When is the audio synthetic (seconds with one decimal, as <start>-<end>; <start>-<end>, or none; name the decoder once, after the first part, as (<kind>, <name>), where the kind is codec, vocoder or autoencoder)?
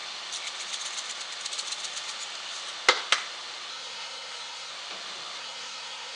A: 3.7-4.7 (codec, SNAC); 5.4-6.2